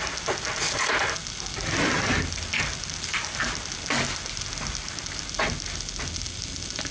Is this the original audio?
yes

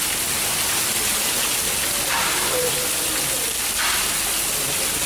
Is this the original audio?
yes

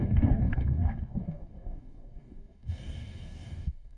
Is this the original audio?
no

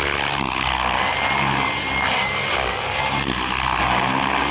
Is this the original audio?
yes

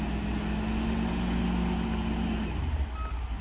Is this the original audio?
yes